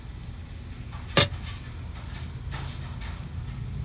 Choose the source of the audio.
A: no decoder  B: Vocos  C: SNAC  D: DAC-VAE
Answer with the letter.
A